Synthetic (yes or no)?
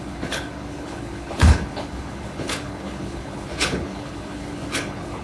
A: yes